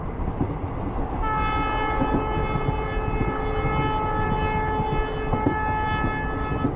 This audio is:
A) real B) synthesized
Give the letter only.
A